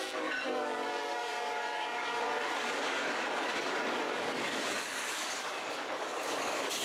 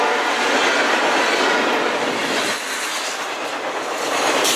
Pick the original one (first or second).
second